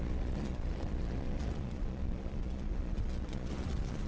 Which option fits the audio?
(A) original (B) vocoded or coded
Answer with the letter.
B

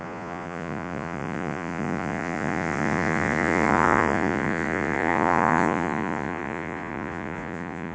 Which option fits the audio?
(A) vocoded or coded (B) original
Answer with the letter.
A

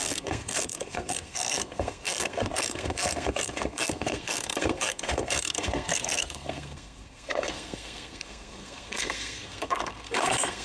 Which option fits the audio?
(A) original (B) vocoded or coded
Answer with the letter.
B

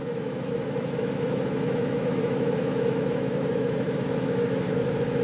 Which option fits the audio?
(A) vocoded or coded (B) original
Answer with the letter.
A